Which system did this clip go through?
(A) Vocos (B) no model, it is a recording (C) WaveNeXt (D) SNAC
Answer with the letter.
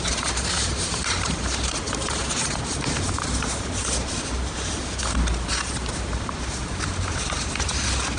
B